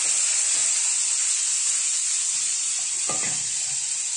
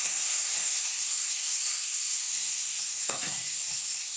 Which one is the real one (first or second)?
first